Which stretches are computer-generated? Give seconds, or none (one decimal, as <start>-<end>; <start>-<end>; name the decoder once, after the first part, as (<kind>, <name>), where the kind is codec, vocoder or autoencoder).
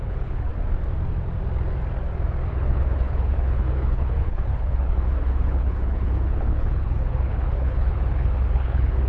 0.0-0.5 (codec, HILCodec); 2.5-9.1